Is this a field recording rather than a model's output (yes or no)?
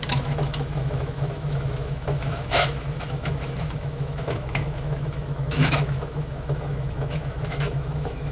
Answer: no